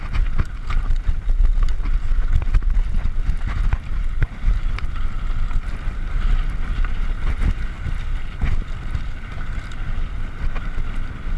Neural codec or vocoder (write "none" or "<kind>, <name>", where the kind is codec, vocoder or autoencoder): none